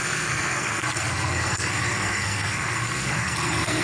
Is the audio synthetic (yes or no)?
yes